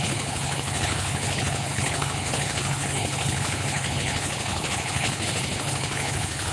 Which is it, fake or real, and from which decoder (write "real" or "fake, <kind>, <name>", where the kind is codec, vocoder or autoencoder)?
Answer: fake, codec, HILCodec